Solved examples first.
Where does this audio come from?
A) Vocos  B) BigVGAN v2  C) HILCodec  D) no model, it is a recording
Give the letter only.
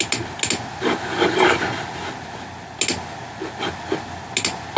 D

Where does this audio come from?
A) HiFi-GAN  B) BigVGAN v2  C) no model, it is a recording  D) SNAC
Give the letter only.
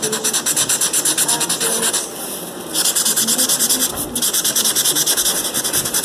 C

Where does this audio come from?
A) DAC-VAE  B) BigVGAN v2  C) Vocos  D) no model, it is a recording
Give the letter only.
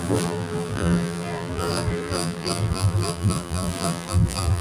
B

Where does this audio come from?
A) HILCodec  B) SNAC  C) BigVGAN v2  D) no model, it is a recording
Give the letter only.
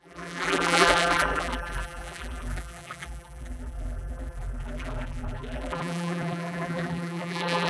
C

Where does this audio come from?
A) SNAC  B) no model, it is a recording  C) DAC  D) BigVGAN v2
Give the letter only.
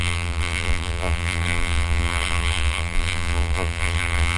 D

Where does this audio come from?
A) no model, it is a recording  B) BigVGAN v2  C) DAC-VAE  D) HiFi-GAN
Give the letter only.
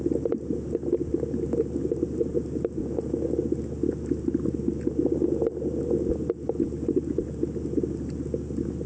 A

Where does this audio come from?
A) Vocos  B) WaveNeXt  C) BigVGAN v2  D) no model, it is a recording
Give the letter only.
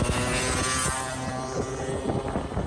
D